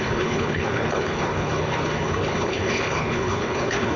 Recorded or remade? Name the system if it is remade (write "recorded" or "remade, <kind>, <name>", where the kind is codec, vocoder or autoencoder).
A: remade, codec, HILCodec